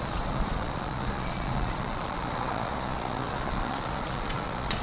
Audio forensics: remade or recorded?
remade